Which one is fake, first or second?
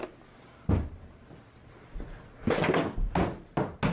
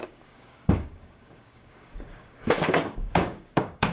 second